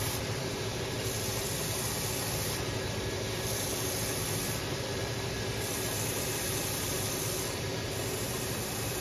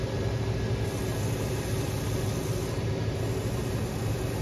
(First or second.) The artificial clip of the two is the first